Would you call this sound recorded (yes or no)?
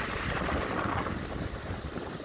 yes